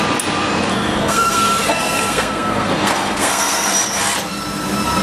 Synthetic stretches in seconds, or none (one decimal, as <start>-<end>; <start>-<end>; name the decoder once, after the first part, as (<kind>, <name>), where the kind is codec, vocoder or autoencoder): 0.7-3.7 (codec, SNAC)